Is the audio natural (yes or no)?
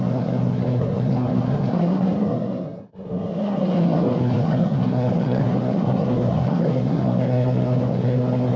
no